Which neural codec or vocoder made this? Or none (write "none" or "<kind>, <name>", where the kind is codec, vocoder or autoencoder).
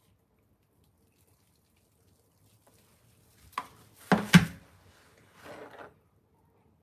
none